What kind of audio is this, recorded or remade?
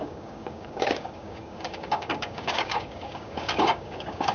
remade